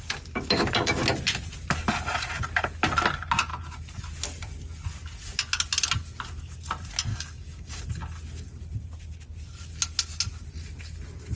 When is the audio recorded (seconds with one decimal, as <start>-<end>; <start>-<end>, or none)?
0.0-7.1; 7.8-11.4

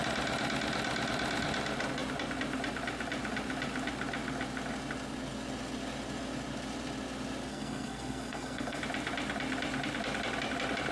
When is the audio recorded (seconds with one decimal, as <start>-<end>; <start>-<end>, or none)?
0.0-7.5; 8.8-10.9